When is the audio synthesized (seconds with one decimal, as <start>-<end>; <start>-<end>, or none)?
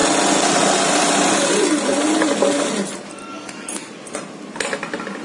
none